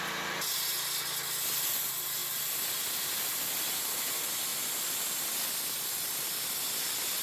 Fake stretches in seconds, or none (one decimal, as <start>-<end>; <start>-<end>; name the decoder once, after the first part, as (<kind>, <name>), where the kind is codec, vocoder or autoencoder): none